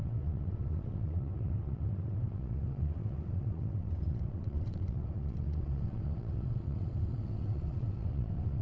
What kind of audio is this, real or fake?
fake